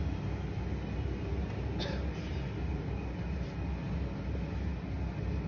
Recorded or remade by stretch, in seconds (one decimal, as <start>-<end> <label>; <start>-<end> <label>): 0.0-5.5 recorded